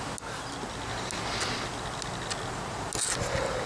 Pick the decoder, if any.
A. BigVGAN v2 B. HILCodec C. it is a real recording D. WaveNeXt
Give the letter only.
C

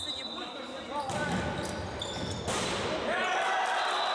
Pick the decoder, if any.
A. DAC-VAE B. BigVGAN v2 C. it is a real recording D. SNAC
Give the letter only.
B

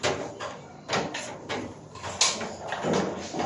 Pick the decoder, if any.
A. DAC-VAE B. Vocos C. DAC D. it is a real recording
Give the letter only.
D